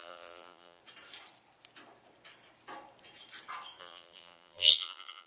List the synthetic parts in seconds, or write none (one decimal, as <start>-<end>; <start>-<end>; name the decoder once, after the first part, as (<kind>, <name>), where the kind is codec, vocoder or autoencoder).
0.0-0.8 (vocoder, BigVGAN v2); 3.8-5.3